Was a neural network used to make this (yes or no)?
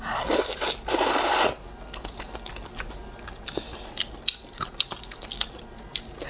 no